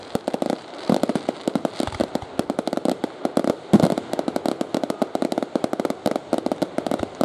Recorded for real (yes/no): yes